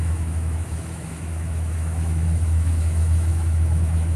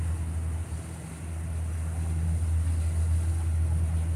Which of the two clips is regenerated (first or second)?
first